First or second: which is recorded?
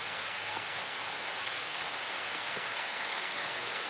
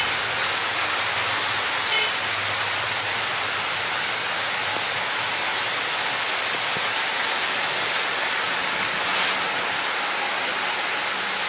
second